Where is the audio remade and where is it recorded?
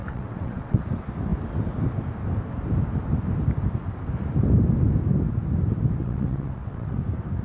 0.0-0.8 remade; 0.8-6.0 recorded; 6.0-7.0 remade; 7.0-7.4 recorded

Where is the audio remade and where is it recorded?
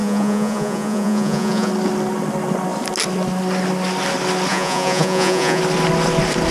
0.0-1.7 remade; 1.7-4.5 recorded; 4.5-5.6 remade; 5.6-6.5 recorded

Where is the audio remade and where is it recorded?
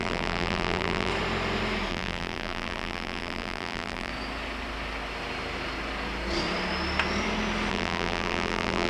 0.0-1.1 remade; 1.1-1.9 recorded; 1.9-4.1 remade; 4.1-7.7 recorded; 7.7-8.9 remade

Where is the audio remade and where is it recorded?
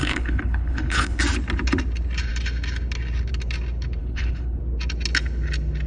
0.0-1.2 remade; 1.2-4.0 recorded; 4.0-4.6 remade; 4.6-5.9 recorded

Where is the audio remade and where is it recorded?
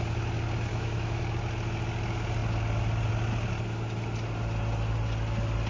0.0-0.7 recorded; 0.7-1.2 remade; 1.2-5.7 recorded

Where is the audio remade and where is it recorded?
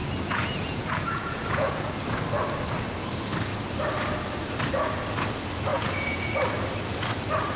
0.0-1.9 remade; 1.9-5.7 recorded; 5.7-6.3 remade; 6.3-7.6 recorded